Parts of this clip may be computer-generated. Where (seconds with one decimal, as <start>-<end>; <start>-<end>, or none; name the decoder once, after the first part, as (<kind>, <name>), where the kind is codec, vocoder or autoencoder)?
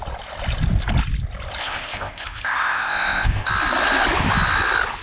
1.6-3.5 (codec, ZipCodec)